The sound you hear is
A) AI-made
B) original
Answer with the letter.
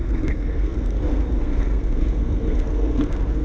A